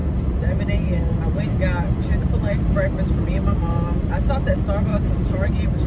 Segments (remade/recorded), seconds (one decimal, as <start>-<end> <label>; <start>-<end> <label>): 0.0-1.2 remade; 1.2-4.9 recorded; 4.9-5.5 remade; 5.5-5.9 recorded